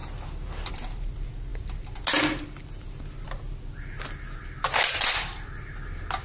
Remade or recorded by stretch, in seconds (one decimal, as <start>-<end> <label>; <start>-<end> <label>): 0.0-6.2 recorded